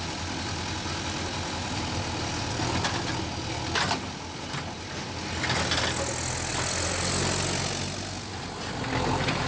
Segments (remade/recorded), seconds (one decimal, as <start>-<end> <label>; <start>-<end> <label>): 0.0-9.5 recorded